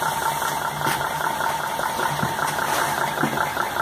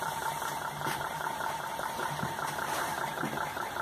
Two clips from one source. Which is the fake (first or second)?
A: second